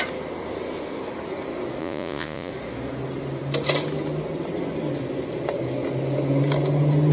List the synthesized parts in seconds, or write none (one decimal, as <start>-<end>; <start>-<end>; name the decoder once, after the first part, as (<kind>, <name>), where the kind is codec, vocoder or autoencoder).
1.8-2.5 (vocoder, Vocos)